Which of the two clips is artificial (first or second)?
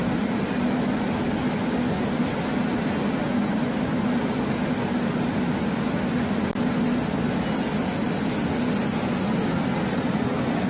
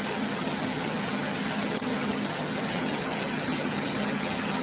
second